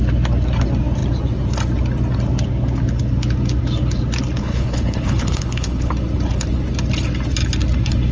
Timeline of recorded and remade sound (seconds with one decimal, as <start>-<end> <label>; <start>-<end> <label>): 0.0-4.4 recorded; 4.4-5.9 remade; 5.9-8.1 recorded